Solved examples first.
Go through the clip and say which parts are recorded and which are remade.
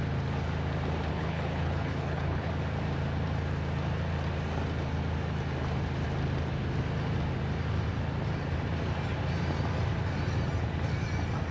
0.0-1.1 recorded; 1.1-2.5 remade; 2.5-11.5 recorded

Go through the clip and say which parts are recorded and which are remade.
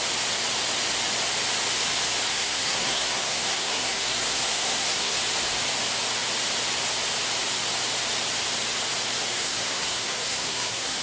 0.0-2.3 recorded; 2.3-5.2 remade; 5.2-9.3 recorded; 9.3-11.0 remade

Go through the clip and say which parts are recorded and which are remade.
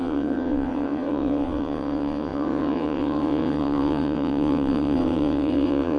0.0-6.0 remade